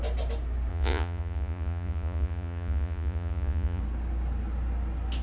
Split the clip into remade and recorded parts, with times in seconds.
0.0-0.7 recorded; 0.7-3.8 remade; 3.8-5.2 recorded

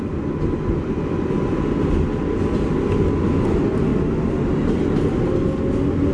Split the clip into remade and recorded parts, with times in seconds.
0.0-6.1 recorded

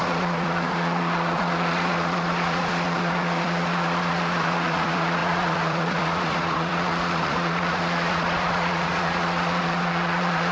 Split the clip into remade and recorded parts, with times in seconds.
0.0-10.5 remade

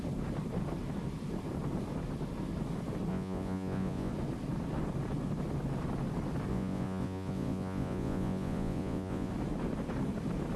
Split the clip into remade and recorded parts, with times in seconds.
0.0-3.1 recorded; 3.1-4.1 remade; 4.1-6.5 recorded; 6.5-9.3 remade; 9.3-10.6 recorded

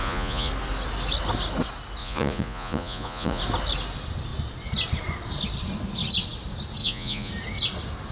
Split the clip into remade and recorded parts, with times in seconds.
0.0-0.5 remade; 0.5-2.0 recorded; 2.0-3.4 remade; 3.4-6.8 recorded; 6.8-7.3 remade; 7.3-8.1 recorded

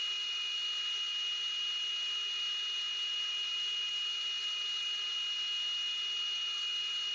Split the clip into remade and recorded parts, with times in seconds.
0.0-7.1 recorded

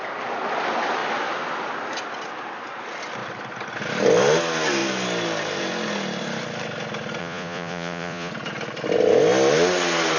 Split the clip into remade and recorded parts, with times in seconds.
0.0-7.2 recorded; 7.2-8.3 remade; 8.3-10.2 recorded

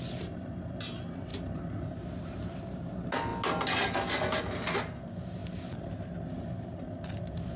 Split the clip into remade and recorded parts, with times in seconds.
0.0-7.6 recorded